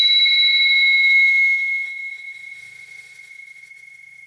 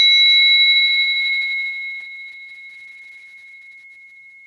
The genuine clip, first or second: second